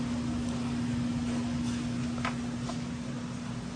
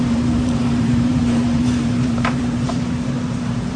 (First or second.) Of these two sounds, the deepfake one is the second